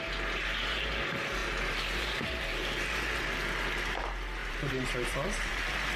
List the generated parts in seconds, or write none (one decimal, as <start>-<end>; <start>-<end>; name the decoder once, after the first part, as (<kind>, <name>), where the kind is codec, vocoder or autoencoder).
1.4-2.4 (vocoder, BigVGAN v2); 4.4-5.6